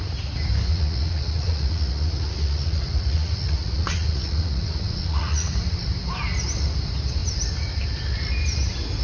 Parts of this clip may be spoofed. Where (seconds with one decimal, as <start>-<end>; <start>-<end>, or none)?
0.7-5.5